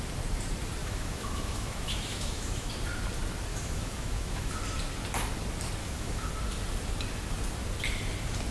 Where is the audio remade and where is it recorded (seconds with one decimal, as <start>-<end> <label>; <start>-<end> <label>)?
0.0-0.8 recorded; 0.8-2.7 remade; 2.7-3.5 recorded; 3.5-4.5 remade; 4.5-5.8 recorded; 5.8-6.3 remade; 6.3-8.5 recorded